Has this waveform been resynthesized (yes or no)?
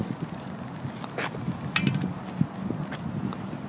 no